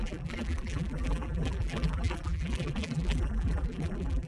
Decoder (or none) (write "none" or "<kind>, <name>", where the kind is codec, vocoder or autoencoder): vocoder, BigVGAN v2